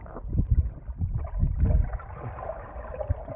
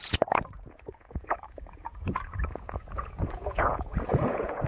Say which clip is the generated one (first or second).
second